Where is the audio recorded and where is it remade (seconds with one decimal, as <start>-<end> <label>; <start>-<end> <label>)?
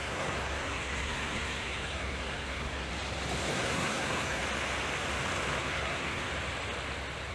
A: 0.0-2.9 remade; 2.9-3.5 recorded; 3.5-4.4 remade; 4.4-5.6 recorded; 5.6-6.3 remade; 6.3-7.3 recorded